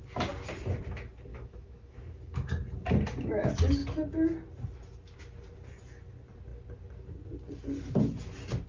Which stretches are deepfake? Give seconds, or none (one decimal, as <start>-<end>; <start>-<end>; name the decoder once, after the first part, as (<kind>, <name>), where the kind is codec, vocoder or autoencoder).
1.3-2.5 (autoencoder, DAC-VAE)